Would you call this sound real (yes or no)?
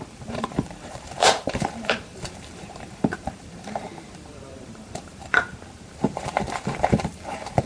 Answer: no